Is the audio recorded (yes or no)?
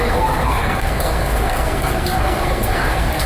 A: no